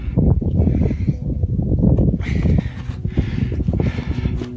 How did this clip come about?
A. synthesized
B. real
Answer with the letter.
B